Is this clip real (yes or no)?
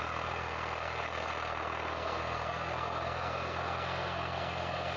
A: no